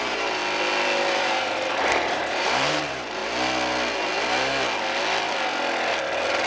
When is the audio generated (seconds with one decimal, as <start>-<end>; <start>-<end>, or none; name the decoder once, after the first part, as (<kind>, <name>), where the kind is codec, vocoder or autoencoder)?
0.0-0.4 (vocoder, BigVGAN v2); 1.1-3.2